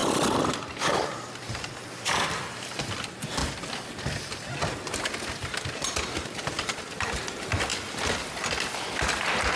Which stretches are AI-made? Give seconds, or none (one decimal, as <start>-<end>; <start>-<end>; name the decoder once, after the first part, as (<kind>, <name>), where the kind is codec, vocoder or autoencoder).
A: 0.0-3.4 (vocoder, BigVGAN v2); 5.3-9.6